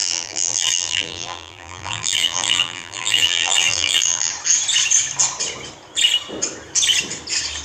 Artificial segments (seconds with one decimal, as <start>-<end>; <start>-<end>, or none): 0.0-4.3